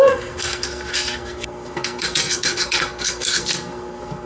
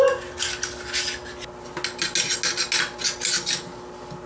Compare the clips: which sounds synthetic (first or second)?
first